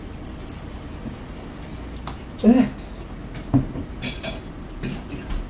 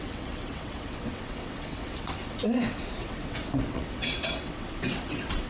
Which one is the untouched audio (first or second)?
first